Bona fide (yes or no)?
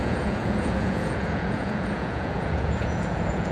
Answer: no